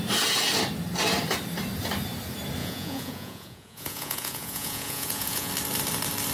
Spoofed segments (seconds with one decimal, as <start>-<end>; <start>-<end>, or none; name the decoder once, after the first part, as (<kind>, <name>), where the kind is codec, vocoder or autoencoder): 2.6-5.5 (vocoder, Vocos)